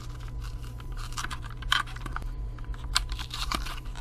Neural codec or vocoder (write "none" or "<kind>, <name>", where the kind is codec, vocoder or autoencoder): vocoder, BigVGAN v2